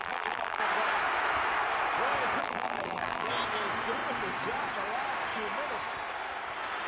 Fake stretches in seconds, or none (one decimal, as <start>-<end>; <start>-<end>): 0.0-0.6; 2.4-3.3